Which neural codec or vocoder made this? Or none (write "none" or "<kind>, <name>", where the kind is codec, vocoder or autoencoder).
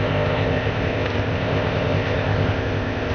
codec, ZipCodec